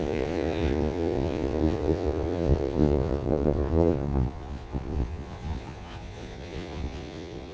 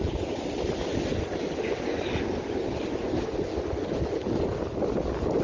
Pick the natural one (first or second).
second